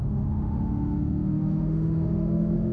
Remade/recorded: remade